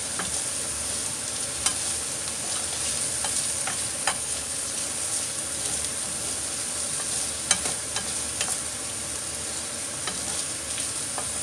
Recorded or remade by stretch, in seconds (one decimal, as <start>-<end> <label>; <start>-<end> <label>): 0.0-4.1 recorded; 4.1-4.8 remade; 4.8-11.4 recorded